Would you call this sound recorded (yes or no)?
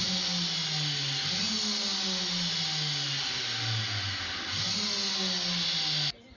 yes